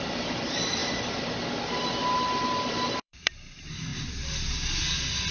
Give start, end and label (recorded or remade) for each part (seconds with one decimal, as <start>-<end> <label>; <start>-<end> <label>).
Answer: 0.0-0.8 remade; 0.8-1.7 recorded; 1.7-3.9 remade; 3.9-5.3 recorded